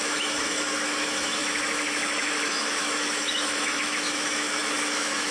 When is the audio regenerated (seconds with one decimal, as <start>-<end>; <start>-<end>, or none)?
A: 0.0-5.3